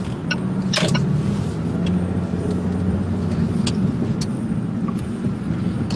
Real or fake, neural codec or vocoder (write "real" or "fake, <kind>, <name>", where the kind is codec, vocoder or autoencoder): real